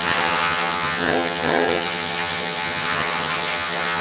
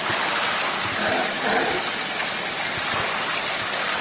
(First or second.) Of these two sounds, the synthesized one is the first